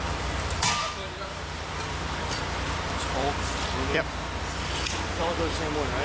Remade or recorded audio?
remade